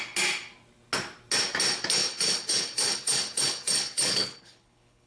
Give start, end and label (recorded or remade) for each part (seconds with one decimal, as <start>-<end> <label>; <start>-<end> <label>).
0.0-2.0 recorded; 2.0-5.1 remade